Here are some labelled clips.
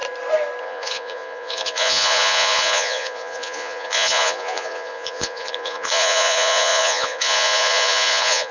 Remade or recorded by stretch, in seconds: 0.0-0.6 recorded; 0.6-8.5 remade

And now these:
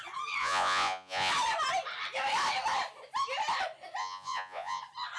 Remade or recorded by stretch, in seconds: 0.0-0.4 recorded; 0.4-1.3 remade; 1.3-4.0 recorded; 4.0-4.8 remade; 4.8-5.2 recorded

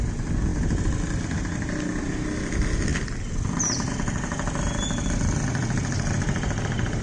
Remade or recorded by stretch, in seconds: 0.0-7.0 recorded

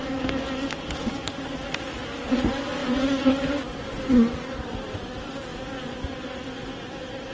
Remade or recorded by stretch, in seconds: 0.0-7.3 recorded

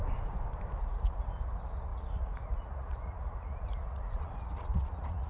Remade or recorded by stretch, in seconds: 0.0-0.8 recorded; 0.8-5.3 remade

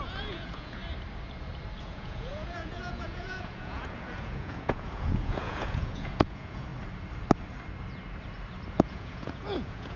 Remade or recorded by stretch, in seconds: 0.0-0.8 remade; 0.8-1.8 recorded; 1.8-6.7 remade; 6.7-8.7 recorded; 8.7-10.0 remade

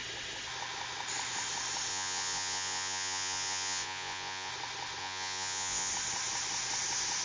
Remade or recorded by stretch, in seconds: 0.0-1.9 recorded; 1.9-4.5 remade; 4.5-5.0 recorded; 5.0-5.9 remade; 5.9-7.2 recorded

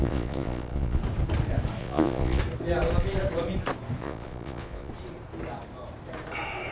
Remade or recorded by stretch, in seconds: 0.0-1.0 remade; 1.0-1.8 recorded; 1.8-2.4 remade; 2.4-4.0 recorded; 4.0-4.9 remade; 4.9-6.7 recorded